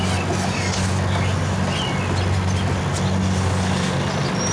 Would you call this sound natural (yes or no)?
yes